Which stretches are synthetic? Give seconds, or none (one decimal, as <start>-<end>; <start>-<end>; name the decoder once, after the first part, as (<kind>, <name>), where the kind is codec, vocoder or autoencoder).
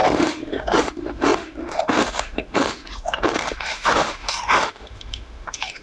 0.0-5.8 (autoencoder, DAC-VAE)